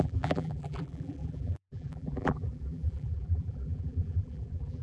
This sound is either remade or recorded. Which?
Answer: remade